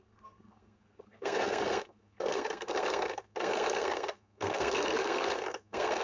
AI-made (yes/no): yes